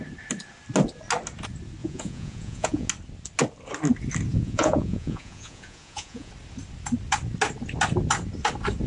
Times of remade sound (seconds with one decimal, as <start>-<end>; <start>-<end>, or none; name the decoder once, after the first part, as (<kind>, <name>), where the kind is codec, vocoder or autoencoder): 1.8-2.9 (vocoder, Vocos); 4.3-6.3